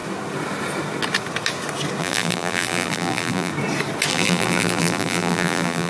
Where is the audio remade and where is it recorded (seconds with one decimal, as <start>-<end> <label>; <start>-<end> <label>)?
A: 0.0-2.0 recorded; 2.0-3.5 remade; 3.5-4.1 recorded; 4.1-5.9 remade

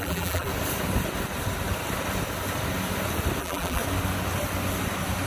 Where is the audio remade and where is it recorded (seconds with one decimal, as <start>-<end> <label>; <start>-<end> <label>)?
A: 0.0-0.5 remade; 0.5-3.4 recorded; 3.4-3.8 remade; 3.8-5.3 recorded